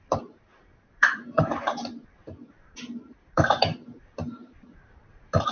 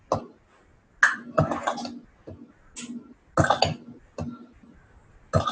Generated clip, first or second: first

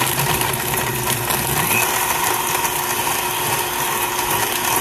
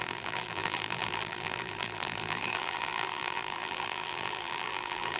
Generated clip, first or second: second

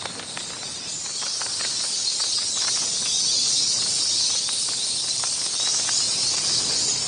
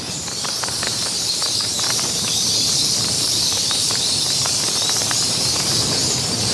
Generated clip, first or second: second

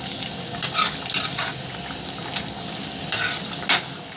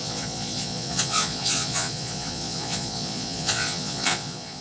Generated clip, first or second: second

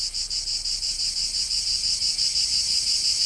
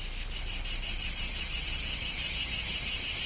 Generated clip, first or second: first